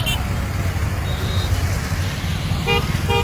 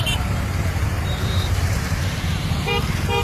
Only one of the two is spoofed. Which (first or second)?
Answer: second